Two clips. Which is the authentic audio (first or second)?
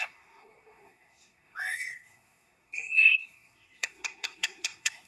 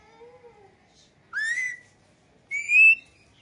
second